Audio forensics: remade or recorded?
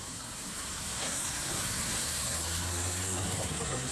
remade